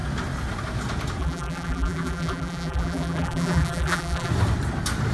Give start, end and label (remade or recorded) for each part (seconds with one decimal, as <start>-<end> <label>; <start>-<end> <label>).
0.0-1.2 recorded; 1.2-4.3 remade; 4.3-5.1 recorded